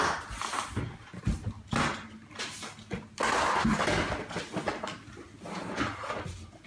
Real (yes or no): yes